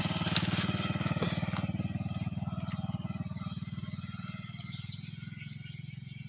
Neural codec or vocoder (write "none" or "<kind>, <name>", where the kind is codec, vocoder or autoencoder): none